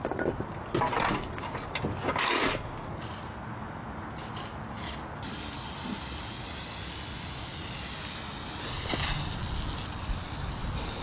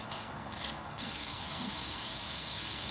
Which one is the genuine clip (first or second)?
first